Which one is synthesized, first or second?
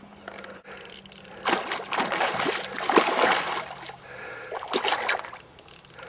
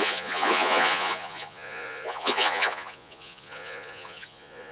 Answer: second